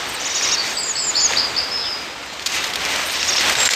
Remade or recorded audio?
recorded